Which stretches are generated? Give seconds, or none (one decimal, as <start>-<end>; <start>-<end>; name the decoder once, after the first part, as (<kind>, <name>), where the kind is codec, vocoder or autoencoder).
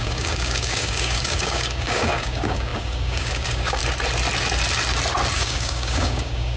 0.0-3.8 (codec, DAC); 5.3-6.6